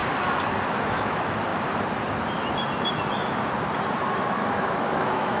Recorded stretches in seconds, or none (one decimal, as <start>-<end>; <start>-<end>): 0.0-0.7; 1.5-4.5